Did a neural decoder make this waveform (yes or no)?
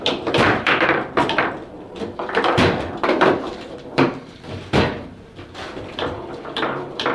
yes